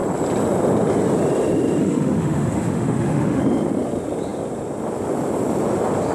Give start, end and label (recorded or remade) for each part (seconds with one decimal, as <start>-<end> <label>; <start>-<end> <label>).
0.0-1.8 recorded; 1.8-3.4 remade; 3.4-6.1 recorded